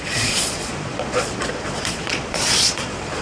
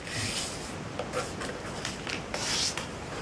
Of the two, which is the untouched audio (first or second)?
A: second